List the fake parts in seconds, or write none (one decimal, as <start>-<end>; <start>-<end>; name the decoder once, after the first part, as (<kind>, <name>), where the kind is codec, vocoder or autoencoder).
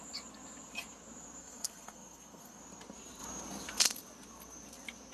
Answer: 1.4-2.6 (codec, SNAC)